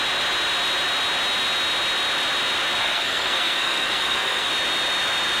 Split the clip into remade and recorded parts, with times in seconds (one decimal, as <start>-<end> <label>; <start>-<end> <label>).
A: 0.0-2.8 recorded; 2.8-4.5 remade; 4.5-5.4 recorded